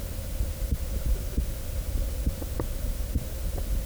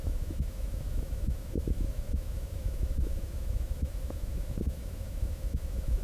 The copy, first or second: second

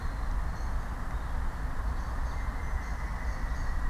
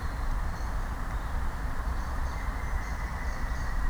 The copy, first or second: second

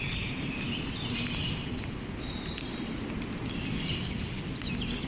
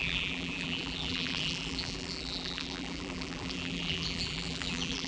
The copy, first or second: second